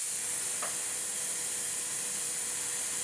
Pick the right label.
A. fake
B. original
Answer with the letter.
B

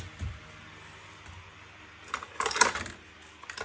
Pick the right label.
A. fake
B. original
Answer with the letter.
B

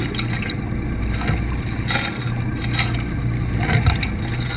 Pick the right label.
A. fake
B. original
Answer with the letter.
B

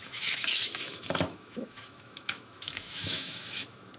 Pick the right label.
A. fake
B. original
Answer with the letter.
A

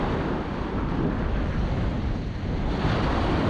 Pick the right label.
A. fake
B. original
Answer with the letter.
B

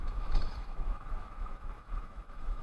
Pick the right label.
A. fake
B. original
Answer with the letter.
A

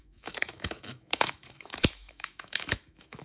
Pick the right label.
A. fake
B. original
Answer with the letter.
A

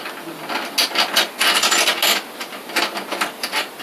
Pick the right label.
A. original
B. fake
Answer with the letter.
A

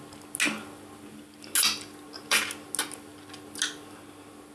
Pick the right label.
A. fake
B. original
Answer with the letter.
B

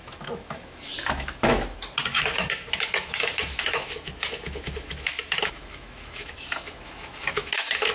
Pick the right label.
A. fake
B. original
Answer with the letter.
A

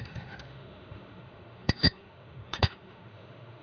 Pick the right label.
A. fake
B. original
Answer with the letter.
A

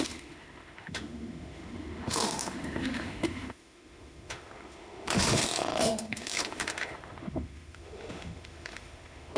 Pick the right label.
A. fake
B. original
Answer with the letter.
A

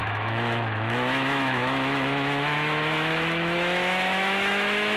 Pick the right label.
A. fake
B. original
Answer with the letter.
A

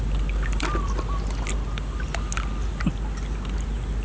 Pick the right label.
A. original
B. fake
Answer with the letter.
A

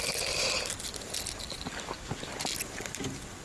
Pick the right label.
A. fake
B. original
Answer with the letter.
B